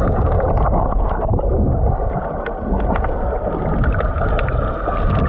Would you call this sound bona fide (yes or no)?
yes